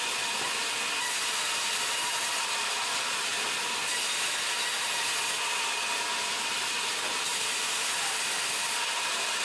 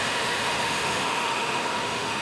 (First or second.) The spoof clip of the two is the second